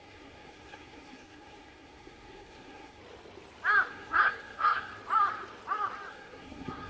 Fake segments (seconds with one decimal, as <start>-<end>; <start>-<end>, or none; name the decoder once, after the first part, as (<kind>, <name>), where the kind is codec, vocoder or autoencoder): 0.0-3.0 (codec, SNAC); 3.9-4.9; 6.1-6.9

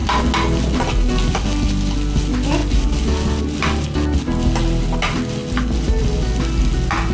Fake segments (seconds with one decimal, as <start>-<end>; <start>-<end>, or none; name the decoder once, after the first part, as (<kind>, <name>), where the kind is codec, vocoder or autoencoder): none

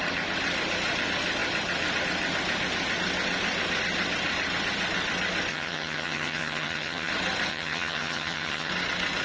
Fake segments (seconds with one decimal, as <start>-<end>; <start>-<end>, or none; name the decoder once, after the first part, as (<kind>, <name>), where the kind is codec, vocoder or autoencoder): 5.5-7.1 (vocoder, HiFi-GAN); 7.5-8.7

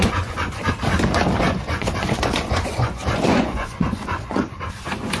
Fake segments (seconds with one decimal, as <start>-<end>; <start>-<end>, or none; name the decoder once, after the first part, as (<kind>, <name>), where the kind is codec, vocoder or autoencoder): 0.0-0.6 (vocoder, Vocos); 1.4-5.2

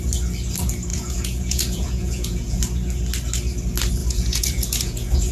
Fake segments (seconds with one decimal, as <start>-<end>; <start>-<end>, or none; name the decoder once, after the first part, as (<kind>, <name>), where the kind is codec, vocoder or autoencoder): 0.9-2.6 (vocoder, Vocos); 4.0-5.3